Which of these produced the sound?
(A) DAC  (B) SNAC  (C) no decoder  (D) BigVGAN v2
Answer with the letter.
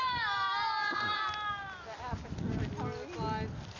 C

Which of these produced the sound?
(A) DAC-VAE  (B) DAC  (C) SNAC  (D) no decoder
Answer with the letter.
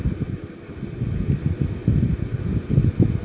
D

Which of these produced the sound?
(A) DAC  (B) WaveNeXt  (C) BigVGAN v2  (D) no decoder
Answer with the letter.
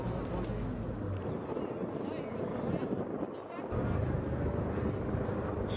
D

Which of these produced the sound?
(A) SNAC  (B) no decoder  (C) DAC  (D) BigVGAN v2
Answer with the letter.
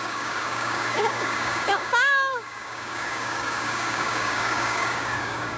C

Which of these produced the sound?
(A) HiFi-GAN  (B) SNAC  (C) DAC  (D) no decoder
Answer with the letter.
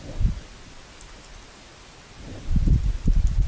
D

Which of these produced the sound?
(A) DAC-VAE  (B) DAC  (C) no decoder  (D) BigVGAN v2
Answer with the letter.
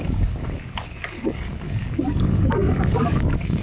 B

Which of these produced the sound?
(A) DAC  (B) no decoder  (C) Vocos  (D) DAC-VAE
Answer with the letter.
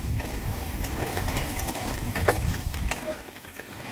A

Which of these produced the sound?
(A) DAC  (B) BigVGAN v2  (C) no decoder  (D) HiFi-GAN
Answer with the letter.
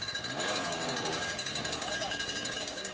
A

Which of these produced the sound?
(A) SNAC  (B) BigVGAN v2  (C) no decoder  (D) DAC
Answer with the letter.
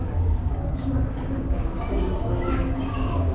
D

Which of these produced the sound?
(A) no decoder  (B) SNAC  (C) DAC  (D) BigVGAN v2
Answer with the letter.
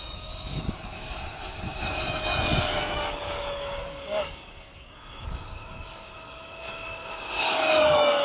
C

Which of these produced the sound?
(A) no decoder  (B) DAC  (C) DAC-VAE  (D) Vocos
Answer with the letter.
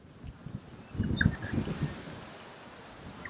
A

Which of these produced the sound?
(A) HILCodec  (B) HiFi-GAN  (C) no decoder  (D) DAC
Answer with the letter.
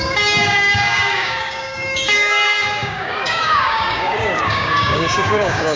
D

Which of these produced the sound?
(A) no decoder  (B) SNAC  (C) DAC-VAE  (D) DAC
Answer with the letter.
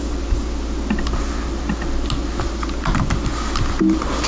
A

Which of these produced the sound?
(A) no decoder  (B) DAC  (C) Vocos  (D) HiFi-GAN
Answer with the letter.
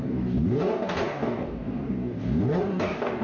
B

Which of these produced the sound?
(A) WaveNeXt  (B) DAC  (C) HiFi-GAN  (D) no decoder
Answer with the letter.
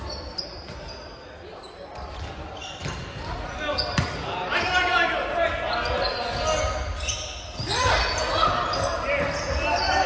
D